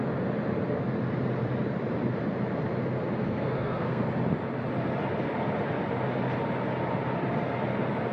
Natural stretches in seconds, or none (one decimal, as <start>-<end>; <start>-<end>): 0.0-3.2; 4.0-8.1